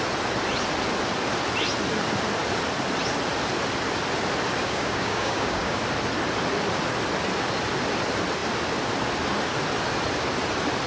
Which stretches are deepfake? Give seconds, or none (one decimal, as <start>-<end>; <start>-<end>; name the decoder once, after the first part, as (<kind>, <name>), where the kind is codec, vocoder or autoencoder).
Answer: 4.6-5.8 (codec, DAC)